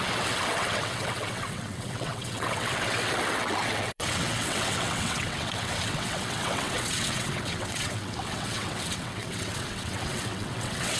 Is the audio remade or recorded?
remade